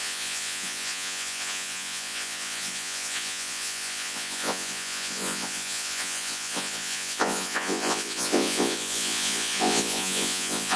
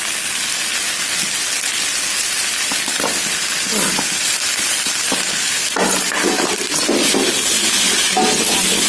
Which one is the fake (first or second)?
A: first